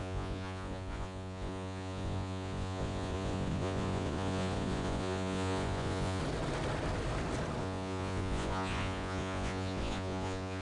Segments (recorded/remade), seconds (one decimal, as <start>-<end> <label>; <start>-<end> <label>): 0.0-6.2 remade; 6.2-7.6 recorded; 7.6-10.6 remade